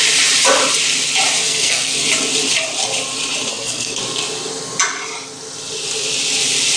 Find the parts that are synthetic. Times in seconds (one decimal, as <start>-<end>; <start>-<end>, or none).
1.4-2.1; 3.5-4.0